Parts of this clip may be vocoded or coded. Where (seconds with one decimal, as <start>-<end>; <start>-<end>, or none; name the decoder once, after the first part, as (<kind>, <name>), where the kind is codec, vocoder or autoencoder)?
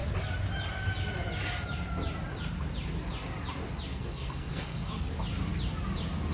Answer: 3.9-5.1 (codec, SNAC)